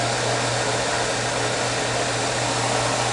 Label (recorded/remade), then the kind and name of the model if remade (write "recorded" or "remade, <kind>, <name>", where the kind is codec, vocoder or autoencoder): recorded